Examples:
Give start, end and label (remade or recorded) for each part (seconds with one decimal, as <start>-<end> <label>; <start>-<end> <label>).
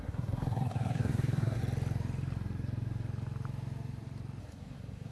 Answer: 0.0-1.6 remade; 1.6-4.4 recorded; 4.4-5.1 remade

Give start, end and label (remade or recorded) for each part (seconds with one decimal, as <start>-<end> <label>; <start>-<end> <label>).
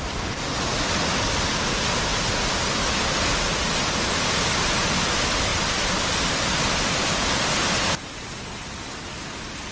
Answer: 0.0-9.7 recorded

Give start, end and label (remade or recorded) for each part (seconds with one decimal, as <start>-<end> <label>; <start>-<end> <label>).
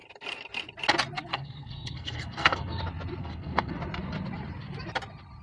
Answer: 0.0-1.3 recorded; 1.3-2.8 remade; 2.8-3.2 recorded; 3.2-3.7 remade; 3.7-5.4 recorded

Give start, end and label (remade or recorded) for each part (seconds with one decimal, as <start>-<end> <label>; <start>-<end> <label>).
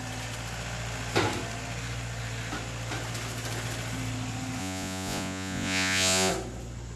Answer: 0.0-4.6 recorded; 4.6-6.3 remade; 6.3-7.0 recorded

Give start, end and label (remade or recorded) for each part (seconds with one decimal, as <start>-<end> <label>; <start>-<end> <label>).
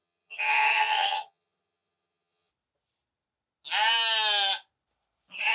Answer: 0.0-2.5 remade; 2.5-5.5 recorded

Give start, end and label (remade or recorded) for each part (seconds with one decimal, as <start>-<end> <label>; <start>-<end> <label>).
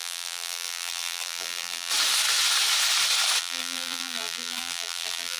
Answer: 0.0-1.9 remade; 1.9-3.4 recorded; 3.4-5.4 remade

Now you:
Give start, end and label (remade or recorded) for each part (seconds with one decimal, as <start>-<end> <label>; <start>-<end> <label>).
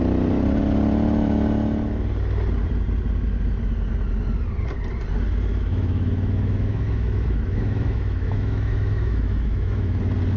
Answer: 0.0-5.5 recorded; 5.5-10.0 remade; 10.0-10.4 recorded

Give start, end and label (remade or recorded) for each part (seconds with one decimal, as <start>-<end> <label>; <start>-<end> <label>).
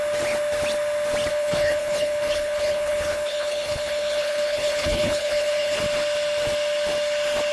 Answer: 0.0-1.3 recorded; 1.3-5.8 remade; 5.8-7.5 recorded